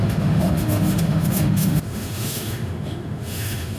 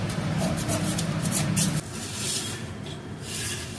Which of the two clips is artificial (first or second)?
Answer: first